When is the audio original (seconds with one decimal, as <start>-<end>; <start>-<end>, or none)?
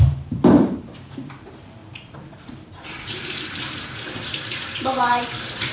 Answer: none